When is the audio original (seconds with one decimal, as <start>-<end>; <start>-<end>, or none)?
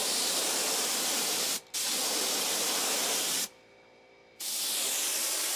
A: 0.0-5.6